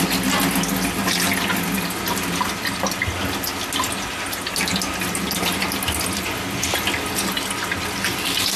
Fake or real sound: real